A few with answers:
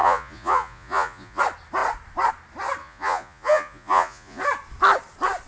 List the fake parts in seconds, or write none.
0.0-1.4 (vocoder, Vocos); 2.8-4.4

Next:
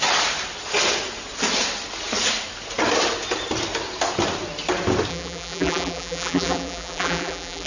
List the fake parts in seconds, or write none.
5.1-7.7 (vocoder, BigVGAN v2)